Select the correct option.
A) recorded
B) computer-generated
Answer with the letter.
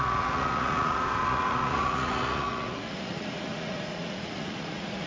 B